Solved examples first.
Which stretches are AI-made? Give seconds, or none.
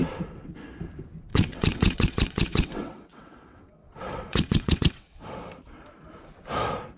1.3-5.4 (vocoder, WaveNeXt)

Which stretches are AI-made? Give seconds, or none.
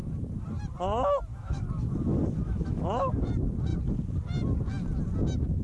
1.3-3.3 (autoencoder, DAC-VAE)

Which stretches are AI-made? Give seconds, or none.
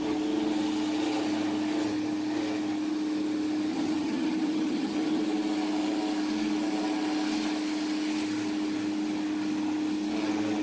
3.7-5.2 (vocoder, HiFi-GAN)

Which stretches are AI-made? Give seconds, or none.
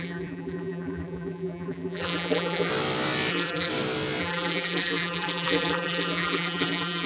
0.0-2.7 (vocoder, BigVGAN v2); 3.3-3.7; 4.2-7.1